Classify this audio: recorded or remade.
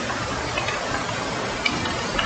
recorded